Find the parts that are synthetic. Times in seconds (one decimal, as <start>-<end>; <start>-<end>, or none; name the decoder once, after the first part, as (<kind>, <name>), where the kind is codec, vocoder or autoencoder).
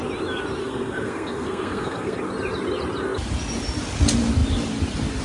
0.6-2.2 (codec, SNAC)